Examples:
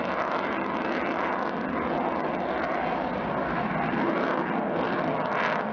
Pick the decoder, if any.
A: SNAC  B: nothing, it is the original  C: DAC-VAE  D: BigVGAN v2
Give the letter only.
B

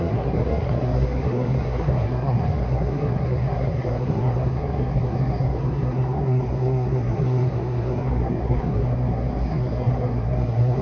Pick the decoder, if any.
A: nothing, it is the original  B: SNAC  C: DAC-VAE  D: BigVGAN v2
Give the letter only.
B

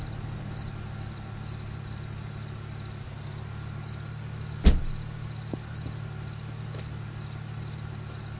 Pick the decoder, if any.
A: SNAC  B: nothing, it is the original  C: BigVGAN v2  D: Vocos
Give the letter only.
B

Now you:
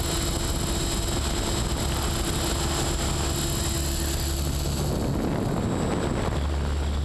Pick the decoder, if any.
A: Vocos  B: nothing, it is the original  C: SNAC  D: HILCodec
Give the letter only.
B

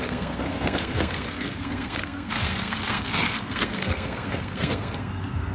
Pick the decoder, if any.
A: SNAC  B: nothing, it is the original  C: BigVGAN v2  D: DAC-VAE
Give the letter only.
A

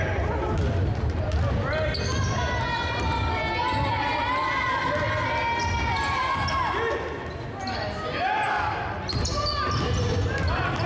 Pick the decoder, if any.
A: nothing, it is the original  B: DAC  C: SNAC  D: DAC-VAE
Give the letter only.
A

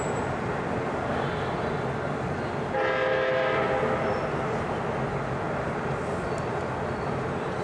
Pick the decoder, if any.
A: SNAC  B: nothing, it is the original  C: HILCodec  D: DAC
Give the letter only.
B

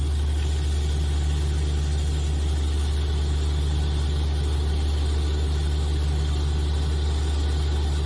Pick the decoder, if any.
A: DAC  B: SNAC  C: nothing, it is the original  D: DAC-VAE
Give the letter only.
C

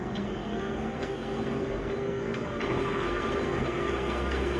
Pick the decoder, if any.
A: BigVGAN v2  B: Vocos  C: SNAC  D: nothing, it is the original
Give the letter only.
C